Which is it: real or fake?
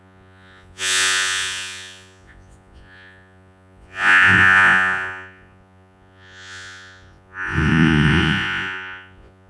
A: fake